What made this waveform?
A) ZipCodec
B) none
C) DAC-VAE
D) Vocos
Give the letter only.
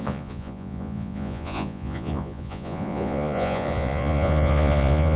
D